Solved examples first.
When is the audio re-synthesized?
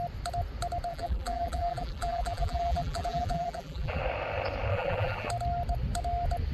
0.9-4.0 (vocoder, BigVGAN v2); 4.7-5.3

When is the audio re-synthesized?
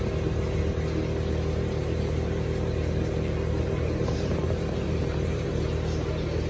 1.8-5.7 (vocoder, BigVGAN v2)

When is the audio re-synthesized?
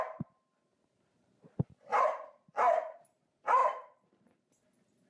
0.7-2.0 (vocoder, BigVGAN v2); 3.6-4.5